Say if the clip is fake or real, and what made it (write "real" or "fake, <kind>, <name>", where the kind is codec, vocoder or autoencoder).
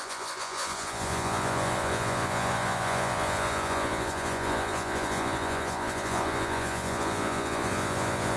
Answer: fake, vocoder, Vocos